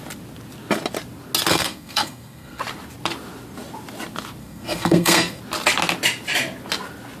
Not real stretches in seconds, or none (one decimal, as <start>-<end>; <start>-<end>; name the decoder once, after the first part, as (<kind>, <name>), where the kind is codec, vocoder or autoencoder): 1.5-2.6 (codec, SNAC); 4.4-5.4